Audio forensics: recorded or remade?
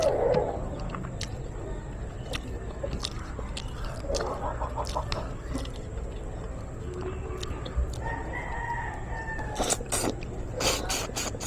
recorded